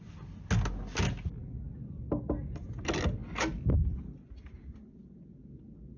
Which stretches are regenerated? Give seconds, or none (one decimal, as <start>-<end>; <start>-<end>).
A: none